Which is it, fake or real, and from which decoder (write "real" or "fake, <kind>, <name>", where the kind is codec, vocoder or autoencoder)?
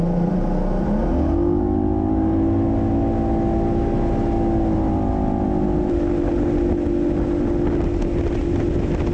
real